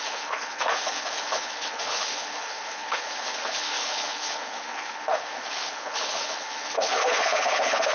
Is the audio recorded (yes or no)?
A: no